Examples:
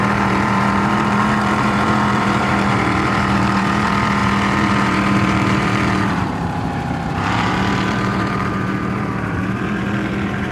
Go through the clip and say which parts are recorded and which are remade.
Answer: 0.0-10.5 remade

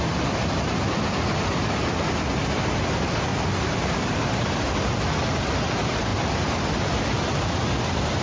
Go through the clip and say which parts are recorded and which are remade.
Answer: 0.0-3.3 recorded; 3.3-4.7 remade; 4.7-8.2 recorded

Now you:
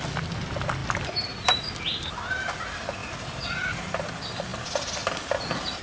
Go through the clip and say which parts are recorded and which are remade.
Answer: 0.0-3.0 recorded; 3.0-4.1 remade; 4.1-5.8 recorded